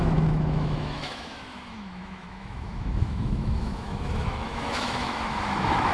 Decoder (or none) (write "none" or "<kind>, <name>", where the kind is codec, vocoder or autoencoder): autoencoder, DAC-VAE